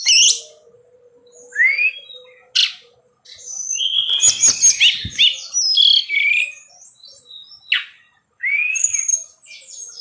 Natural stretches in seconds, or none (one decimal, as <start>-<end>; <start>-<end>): 0.0-10.0